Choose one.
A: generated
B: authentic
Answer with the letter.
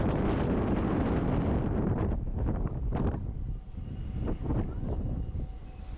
B